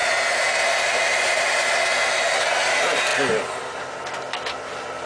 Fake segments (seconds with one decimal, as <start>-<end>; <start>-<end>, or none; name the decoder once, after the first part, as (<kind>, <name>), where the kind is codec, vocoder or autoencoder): none